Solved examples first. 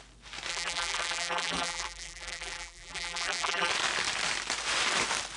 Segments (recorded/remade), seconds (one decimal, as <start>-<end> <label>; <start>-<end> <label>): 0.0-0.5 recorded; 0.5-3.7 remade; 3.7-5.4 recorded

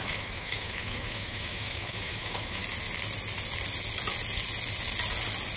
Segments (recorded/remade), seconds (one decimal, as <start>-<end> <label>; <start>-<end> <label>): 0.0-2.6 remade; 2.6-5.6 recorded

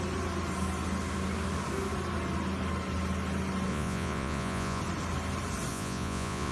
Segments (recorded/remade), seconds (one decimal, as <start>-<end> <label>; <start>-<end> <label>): 0.0-3.7 recorded; 3.7-4.8 remade; 4.8-5.7 recorded; 5.7-6.5 remade

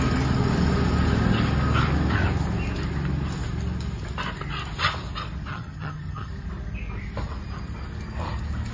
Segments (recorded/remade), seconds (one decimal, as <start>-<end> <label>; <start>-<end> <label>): 0.0-5.5 recorded; 5.5-6.3 remade; 6.3-8.7 recorded

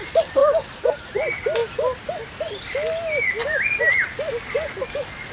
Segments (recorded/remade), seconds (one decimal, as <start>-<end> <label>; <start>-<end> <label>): 0.0-5.3 recorded

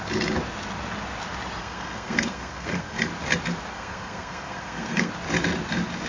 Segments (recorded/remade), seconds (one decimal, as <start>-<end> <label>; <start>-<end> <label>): 0.0-1.6 recorded; 1.6-3.0 remade; 3.0-3.7 recorded; 3.7-5.1 remade; 5.1-6.1 recorded

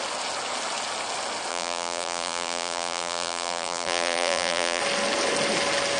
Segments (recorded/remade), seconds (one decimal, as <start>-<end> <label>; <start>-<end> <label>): 0.0-1.5 recorded; 1.5-4.8 remade; 4.8-6.0 recorded

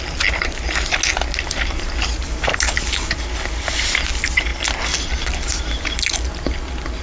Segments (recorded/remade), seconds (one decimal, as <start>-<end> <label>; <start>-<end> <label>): 0.0-7.0 recorded